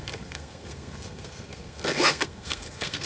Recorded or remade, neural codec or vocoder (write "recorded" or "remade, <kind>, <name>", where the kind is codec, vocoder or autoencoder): remade, codec, SNAC